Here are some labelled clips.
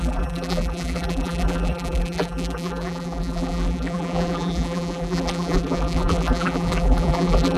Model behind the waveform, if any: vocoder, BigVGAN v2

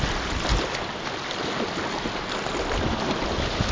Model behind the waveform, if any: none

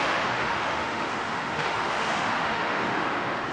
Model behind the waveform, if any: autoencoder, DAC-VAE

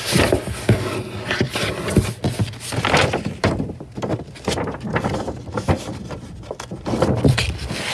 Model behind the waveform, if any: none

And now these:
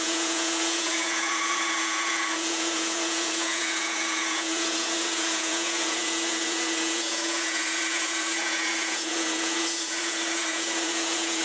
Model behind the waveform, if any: vocoder, Vocos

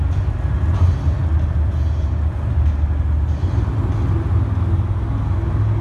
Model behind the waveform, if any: none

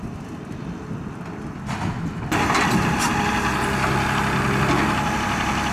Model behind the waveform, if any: none